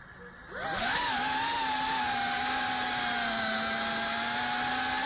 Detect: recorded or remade recorded